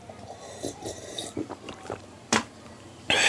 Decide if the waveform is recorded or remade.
remade